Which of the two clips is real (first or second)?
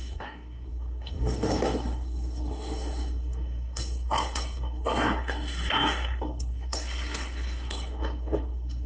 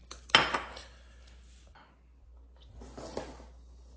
second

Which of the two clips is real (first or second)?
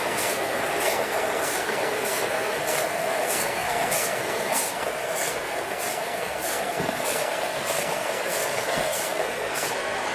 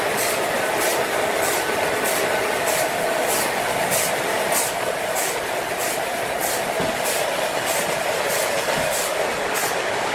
second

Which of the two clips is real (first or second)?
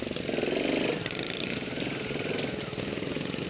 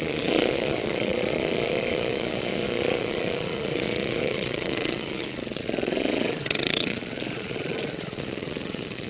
first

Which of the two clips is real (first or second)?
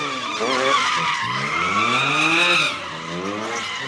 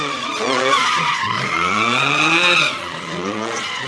first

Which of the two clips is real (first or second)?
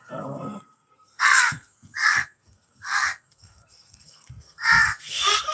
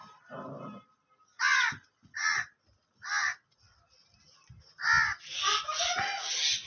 second